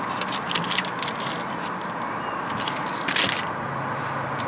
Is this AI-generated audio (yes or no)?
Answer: no